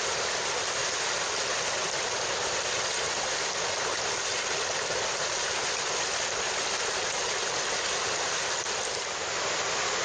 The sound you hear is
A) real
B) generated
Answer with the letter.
A